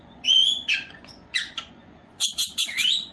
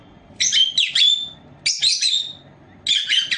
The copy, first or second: first